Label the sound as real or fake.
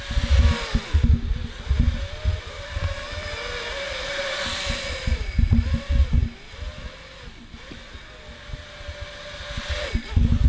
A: real